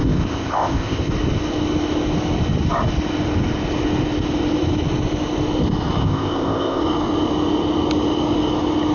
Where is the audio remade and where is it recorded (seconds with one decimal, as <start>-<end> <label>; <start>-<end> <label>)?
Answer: 0.0-1.1 remade; 1.1-6.0 recorded; 6.0-6.8 remade; 6.8-8.9 recorded